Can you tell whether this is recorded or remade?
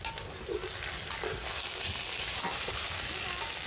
recorded